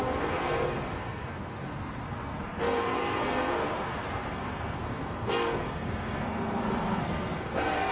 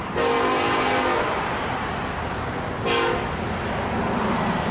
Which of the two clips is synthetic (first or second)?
first